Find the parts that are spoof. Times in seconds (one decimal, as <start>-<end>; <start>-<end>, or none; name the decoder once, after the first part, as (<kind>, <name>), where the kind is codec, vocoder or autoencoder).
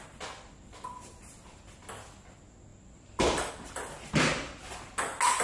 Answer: 2.7-3.5 (vocoder, BigVGAN v2)